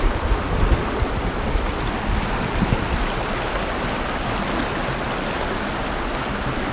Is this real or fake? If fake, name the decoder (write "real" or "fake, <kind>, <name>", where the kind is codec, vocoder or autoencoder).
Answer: real